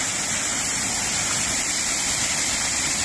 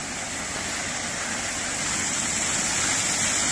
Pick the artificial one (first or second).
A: first